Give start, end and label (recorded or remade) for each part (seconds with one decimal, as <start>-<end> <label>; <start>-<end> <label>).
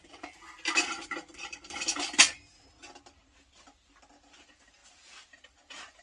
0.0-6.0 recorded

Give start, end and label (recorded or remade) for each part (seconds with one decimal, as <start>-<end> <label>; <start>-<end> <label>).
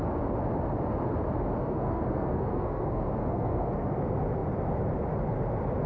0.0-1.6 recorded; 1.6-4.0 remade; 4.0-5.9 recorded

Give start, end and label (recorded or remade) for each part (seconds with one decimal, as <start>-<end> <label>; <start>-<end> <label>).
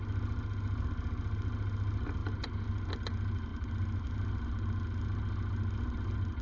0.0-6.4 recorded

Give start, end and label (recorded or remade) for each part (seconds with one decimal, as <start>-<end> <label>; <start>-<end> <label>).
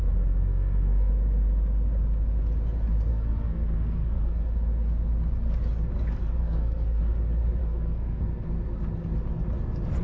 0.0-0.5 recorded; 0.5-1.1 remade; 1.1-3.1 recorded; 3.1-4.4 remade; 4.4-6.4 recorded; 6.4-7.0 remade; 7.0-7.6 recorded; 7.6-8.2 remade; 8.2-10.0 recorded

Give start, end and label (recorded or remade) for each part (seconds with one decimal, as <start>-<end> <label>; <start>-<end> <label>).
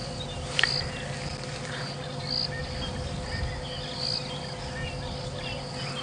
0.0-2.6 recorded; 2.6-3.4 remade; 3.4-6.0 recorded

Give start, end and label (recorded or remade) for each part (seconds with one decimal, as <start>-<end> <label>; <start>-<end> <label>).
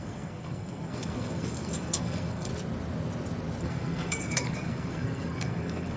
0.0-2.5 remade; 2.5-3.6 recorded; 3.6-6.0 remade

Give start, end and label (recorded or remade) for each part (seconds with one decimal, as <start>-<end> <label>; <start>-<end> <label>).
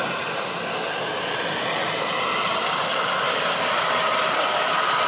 0.0-5.1 recorded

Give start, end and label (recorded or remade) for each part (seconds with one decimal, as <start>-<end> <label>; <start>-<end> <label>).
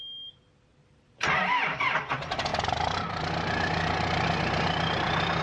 0.0-0.8 recorded; 0.8-1.4 remade; 1.4-2.5 recorded; 2.5-3.2 remade; 3.2-5.4 recorded